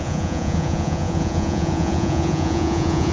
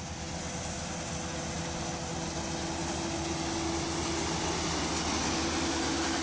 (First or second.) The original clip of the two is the second